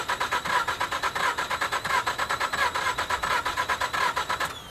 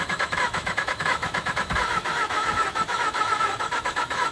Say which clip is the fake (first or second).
second